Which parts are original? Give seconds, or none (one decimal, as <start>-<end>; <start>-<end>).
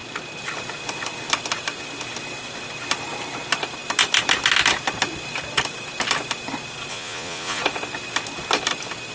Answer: 0.0-6.9; 7.6-9.1